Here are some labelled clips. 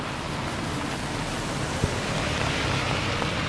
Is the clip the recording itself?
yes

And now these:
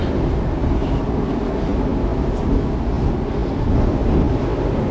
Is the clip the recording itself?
yes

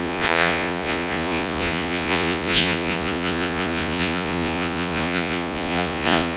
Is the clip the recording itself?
no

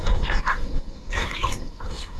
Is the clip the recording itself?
no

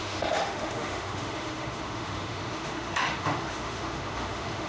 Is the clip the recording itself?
no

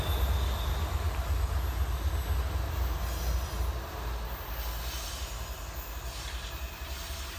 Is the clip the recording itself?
yes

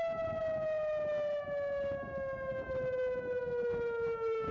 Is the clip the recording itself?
yes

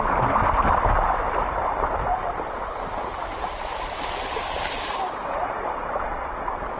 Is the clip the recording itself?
yes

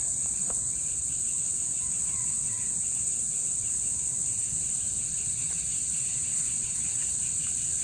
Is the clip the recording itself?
no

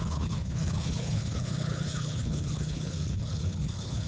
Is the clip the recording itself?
no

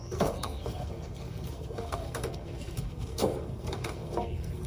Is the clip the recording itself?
no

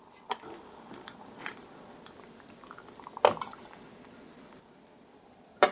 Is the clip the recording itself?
yes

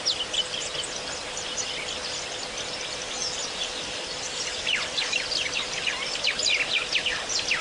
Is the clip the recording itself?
yes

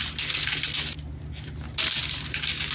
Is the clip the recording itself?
yes